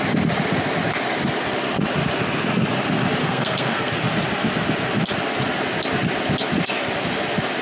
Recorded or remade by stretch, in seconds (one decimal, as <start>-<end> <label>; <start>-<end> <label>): 0.0-3.2 recorded; 3.2-3.9 remade; 3.9-7.6 recorded